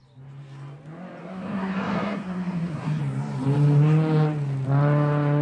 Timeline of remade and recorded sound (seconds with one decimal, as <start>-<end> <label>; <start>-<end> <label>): 0.0-1.2 recorded; 1.2-3.0 remade; 3.0-5.4 recorded